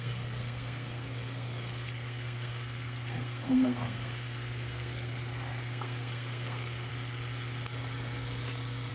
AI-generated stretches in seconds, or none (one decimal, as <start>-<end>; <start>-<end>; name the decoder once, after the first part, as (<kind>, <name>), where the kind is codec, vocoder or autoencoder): 0.0-6.9 (codec, SNAC)